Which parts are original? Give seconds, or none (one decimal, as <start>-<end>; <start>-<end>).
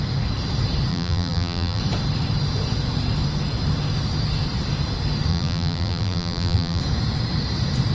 0.0-0.9; 1.8-5.3; 6.8-7.9